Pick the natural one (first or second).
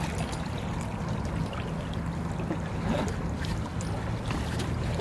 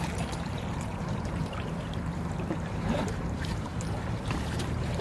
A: first